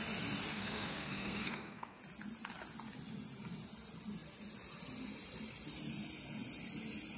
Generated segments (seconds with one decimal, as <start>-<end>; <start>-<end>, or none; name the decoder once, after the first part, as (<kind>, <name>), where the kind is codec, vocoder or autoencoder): 0.5-2.0 (codec, SNAC)